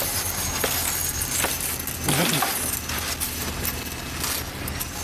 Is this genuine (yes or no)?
yes